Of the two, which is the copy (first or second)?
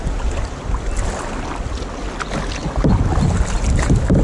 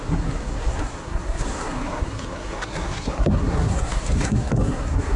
second